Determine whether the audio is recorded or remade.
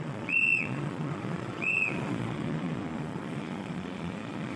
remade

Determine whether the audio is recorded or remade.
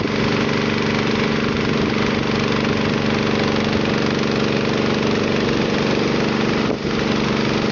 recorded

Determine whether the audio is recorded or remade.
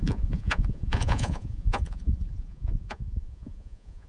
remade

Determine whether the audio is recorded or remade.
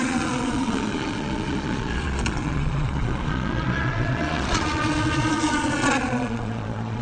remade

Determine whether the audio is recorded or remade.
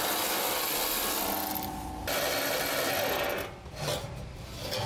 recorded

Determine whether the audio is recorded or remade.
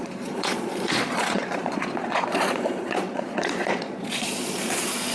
remade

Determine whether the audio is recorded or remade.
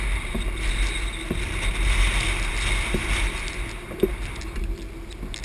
recorded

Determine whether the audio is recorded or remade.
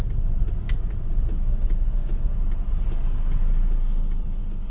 recorded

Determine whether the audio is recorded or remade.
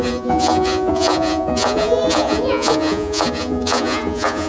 remade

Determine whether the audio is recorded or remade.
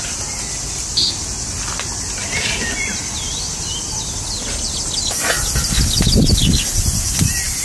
recorded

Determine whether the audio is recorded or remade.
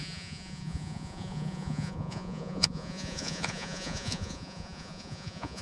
remade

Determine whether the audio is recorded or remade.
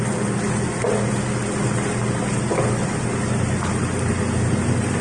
recorded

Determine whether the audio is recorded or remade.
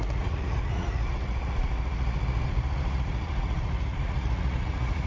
remade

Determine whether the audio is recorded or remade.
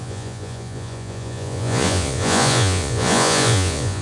remade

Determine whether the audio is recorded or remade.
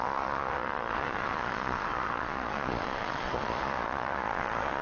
remade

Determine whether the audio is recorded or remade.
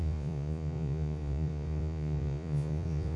remade